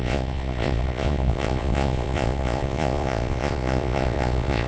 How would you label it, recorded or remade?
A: remade